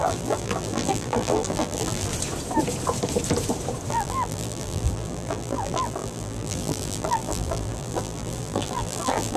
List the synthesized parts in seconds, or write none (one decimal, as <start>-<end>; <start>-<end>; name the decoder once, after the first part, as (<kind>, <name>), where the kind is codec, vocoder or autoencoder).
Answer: 0.0-2.1 (vocoder, BigVGAN v2); 3.9-9.4